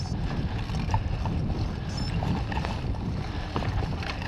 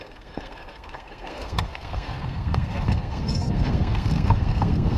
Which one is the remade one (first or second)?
second